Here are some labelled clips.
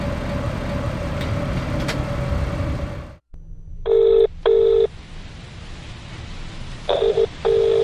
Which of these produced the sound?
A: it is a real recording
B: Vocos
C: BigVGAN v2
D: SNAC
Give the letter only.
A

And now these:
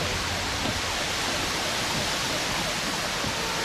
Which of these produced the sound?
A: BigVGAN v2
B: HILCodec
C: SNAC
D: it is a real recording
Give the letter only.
A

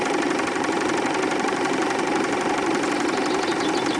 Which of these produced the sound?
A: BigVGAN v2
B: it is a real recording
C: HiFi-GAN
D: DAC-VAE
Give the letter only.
A